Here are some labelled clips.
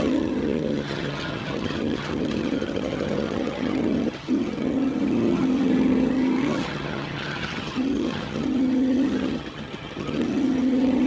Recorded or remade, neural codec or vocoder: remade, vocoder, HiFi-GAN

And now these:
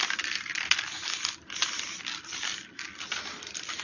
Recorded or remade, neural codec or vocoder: recorded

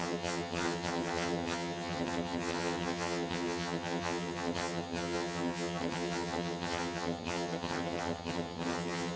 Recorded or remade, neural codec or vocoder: remade, vocoder, HiFi-GAN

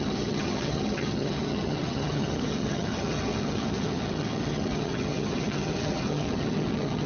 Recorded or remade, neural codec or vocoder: remade, vocoder, HiFi-GAN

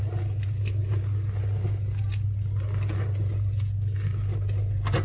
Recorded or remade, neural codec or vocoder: recorded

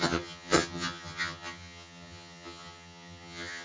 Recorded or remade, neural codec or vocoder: remade, vocoder, HiFi-GAN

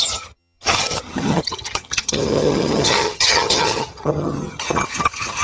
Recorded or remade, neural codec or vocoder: remade, vocoder, HiFi-GAN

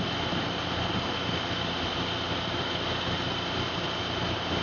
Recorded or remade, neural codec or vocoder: recorded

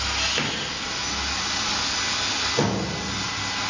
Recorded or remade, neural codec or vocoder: recorded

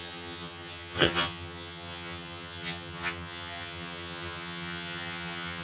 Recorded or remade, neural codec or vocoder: remade, vocoder, HiFi-GAN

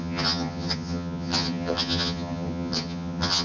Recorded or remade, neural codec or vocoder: remade, vocoder, HiFi-GAN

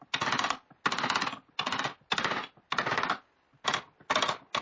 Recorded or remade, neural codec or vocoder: recorded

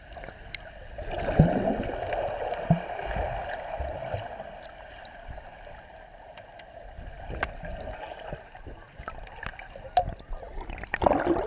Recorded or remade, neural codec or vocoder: recorded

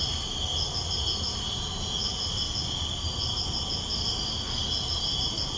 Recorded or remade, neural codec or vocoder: recorded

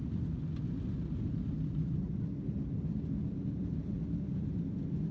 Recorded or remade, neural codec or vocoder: recorded